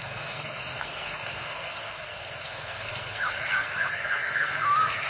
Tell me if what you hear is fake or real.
fake